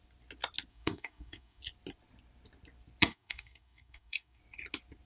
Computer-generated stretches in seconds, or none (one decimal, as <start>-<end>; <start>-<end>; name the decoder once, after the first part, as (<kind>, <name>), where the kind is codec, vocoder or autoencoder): 0.7-1.6 (codec, DAC); 3.1-4.4